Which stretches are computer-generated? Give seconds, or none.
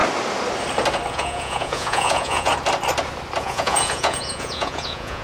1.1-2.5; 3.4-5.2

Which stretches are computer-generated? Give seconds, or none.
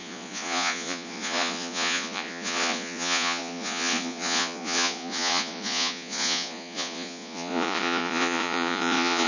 0.0-9.3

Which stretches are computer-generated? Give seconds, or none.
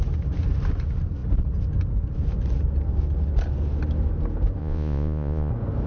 4.6-5.5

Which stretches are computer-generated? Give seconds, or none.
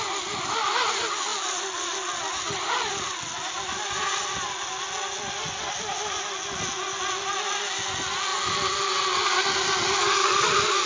none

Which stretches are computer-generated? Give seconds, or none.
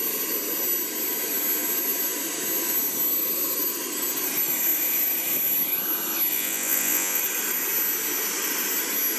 6.3-7.2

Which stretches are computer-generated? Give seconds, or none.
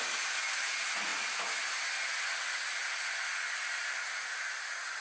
none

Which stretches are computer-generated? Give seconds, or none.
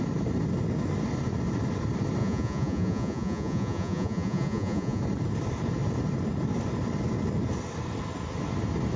2.2-5.0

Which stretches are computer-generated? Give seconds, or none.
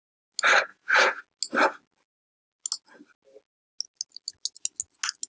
0.7-1.2